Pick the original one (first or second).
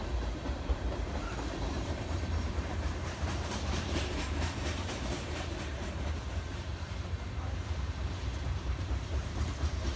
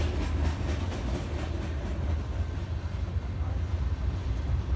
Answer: second